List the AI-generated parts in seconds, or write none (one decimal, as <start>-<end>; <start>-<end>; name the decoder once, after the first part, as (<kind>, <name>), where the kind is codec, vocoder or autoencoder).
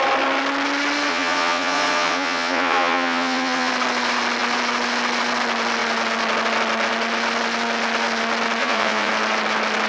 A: 1.1-3.7 (vocoder, Vocos); 8.6-9.1